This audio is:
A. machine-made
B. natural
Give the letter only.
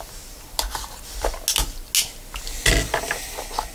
B